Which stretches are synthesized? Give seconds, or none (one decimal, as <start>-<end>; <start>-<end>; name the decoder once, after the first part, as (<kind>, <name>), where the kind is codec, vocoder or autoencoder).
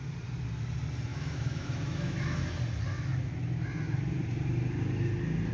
1.1-2.5 (autoencoder, DAC-VAE)